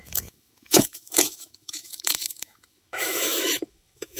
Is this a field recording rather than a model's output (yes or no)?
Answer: no